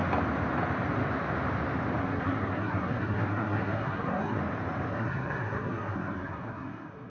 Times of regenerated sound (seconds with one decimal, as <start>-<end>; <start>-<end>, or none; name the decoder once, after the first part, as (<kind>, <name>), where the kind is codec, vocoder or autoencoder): 2.0-4.4 (codec, SNAC); 4.9-7.1